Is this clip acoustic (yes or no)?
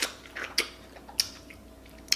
yes